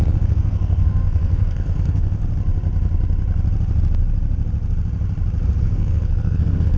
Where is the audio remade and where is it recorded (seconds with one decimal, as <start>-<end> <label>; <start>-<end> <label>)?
0.0-2.2 remade; 2.2-5.6 recorded; 5.6-6.8 remade

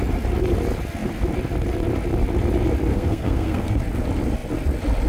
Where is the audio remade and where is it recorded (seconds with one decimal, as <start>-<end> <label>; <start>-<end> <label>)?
0.0-2.9 recorded; 2.9-3.8 remade; 3.8-5.1 recorded

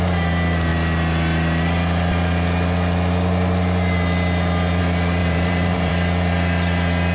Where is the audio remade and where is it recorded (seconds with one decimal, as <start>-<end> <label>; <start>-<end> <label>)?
0.0-5.2 recorded; 5.2-5.9 remade; 5.9-7.1 recorded

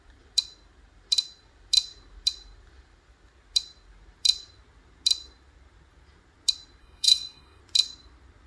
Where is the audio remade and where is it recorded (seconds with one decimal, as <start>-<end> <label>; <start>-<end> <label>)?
0.0-6.8 recorded; 6.8-7.6 remade; 7.6-8.5 recorded

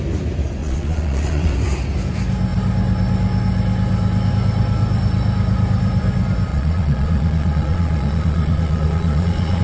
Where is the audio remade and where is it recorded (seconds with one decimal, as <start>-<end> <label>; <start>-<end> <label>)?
0.0-0.6 recorded; 0.6-1.5 remade; 1.5-6.5 recorded; 6.5-9.6 remade

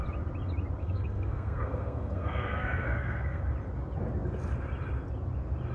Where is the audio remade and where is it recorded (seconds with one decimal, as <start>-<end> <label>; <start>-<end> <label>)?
0.0-0.8 recorded; 0.8-3.4 remade; 3.4-5.7 recorded

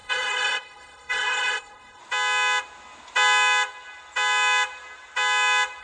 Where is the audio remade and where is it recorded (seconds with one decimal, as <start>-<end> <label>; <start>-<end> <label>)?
0.0-2.0 remade; 2.0-5.8 recorded